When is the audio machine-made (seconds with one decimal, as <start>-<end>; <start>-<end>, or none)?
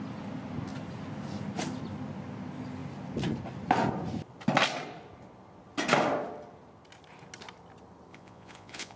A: 8.1-9.0